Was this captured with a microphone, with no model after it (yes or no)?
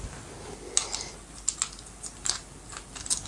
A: yes